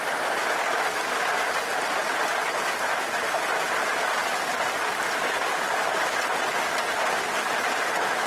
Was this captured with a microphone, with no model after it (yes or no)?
no